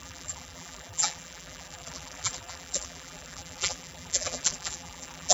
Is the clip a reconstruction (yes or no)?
yes